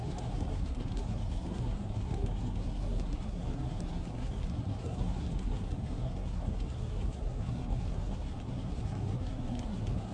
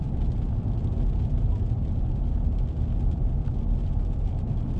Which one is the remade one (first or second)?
first